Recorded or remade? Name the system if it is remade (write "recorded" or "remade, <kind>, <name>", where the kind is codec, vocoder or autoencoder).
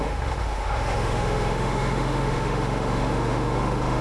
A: remade, autoencoder, DAC-VAE